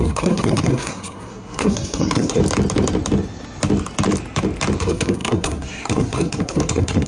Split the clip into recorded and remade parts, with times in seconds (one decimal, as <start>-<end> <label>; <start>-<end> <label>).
0.0-2.4 remade; 2.4-4.8 recorded; 4.8-7.1 remade